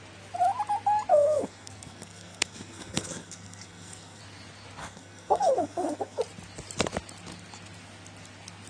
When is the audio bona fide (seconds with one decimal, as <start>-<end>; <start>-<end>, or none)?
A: 0.0-1.1; 4.2-4.8; 6.2-8.7